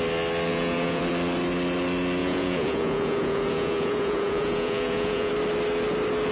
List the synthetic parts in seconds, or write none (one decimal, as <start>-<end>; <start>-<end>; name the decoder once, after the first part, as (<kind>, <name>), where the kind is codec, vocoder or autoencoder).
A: 0.5-1.0 (vocoder, Vocos); 2.2-5.3